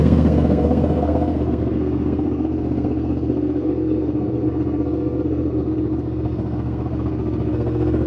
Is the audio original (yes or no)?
no